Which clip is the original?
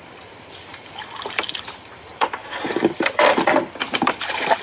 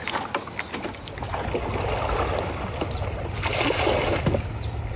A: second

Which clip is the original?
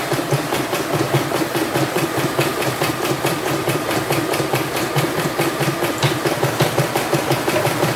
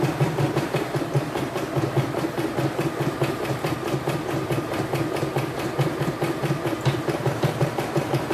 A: second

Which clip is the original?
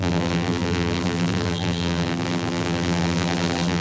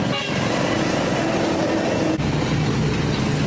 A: second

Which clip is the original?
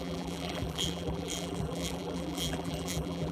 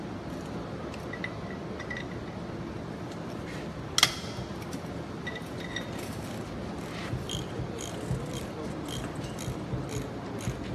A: second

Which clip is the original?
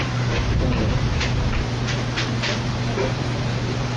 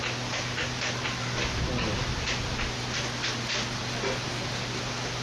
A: second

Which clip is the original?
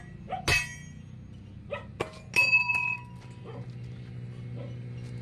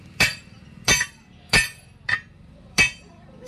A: first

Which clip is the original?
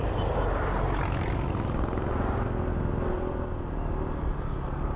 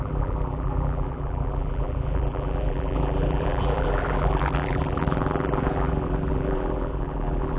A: first